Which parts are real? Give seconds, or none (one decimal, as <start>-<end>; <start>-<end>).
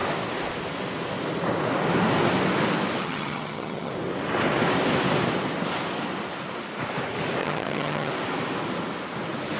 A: 0.0-3.0; 3.9-7.4; 8.1-9.6